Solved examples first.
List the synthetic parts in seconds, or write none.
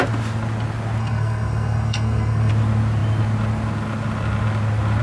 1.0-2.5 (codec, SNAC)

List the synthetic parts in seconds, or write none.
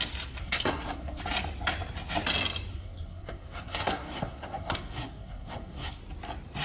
0.4-1.2 (codec, SNAC); 2.7-6.0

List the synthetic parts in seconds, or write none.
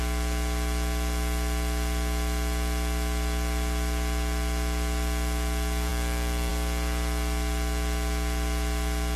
none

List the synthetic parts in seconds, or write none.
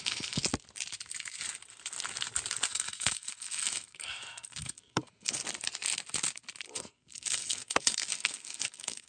0.0-0.4 (codec, SNAC); 2.7-5.4; 6.8-9.1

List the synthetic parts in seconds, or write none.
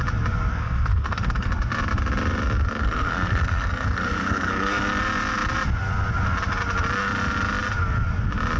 0.5-1.5 (codec, SNAC); 2.8-4.8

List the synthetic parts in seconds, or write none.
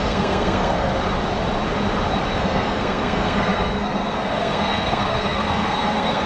0.0-0.9 (codec, SNAC); 2.4-6.3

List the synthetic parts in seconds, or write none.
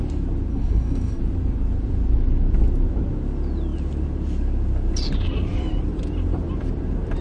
0.5-1.2 (codec, SNAC)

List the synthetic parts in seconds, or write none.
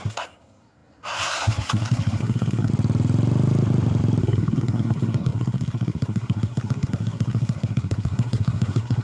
0.0-2.7 (codec, SNAC); 4.2-9.0